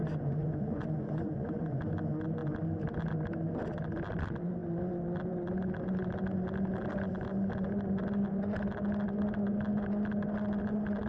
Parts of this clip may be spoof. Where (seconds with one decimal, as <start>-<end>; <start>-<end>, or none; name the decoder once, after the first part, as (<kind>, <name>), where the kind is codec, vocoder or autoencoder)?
0.0-1.8 (vocoder, Vocos)